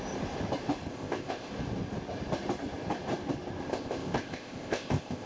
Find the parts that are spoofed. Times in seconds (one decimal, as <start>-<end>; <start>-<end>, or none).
0.9-1.5; 3.7-5.3